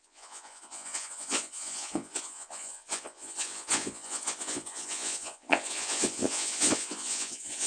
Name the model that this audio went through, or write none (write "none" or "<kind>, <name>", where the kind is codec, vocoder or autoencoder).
vocoder, Vocos